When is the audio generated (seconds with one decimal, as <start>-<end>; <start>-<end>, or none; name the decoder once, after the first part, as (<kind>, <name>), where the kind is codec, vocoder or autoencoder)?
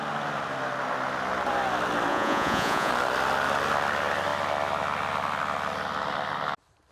2.1-2.9 (vocoder, Vocos)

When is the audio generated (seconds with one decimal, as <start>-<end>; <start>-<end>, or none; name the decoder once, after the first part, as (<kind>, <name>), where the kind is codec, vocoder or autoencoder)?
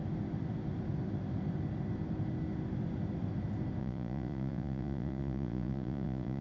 3.8-6.4 (vocoder, Vocos)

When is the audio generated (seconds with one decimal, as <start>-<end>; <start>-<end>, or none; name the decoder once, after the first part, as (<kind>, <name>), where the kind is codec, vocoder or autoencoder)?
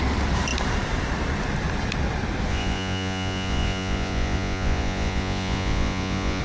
2.5-6.4 (vocoder, Vocos)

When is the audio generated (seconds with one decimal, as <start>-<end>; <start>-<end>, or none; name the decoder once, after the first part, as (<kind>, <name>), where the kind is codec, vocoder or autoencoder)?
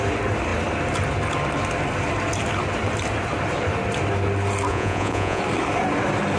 4.7-5.4 (vocoder, Vocos)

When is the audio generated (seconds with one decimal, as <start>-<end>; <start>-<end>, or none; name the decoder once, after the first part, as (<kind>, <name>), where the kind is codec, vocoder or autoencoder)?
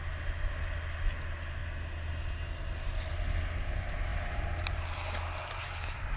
none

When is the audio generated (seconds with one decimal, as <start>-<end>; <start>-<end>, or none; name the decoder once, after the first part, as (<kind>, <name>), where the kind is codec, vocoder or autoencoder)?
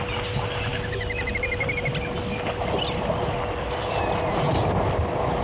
none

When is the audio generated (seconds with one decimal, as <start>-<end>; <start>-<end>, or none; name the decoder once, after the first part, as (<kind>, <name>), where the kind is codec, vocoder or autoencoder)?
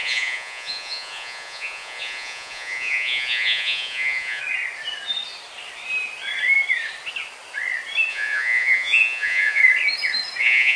0.0-4.4 (vocoder, Vocos); 8.1-9.6; 10.4-10.8